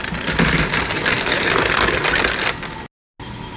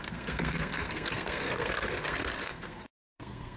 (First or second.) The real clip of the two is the first